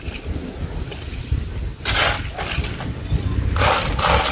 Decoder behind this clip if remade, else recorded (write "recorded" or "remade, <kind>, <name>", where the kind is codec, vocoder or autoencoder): recorded